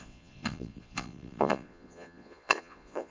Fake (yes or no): yes